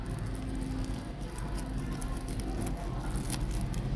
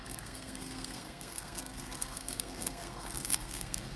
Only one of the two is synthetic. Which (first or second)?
second